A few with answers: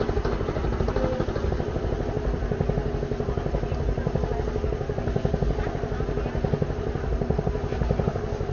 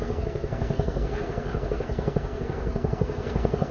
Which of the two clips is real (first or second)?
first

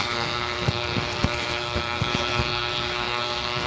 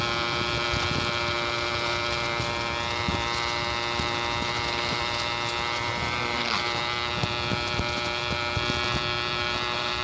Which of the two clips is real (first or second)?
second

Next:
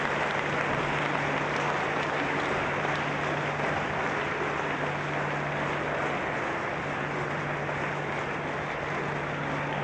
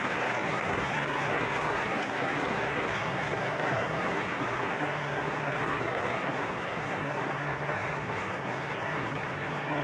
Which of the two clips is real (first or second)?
first